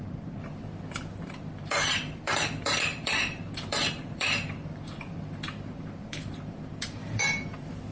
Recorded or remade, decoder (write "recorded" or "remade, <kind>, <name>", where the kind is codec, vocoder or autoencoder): remade, vocoder, BigVGAN v2